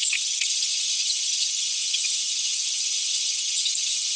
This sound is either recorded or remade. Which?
remade